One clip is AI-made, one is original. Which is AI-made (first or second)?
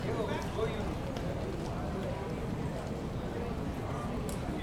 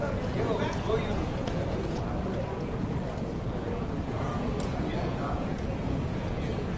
second